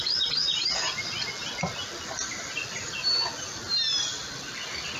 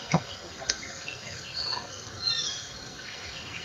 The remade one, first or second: second